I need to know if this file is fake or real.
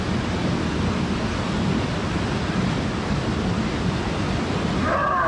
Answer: real